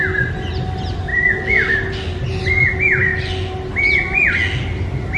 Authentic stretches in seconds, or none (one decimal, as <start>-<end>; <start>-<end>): 0.0-5.2